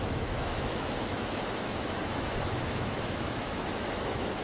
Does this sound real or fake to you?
fake